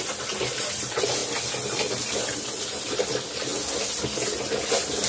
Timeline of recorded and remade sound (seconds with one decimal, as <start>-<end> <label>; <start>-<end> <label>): 0.0-5.1 recorded